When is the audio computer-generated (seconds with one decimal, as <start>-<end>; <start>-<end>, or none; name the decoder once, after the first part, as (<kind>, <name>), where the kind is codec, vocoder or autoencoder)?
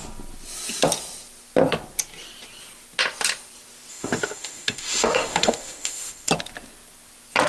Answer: 3.9-6.3 (autoencoder, DAC-VAE)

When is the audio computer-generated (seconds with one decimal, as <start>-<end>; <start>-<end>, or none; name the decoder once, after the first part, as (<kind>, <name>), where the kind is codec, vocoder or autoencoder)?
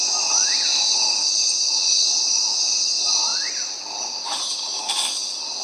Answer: none